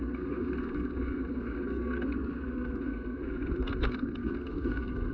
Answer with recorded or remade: remade